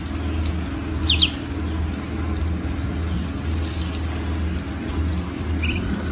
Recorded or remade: recorded